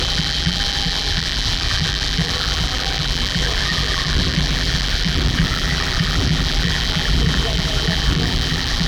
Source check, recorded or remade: remade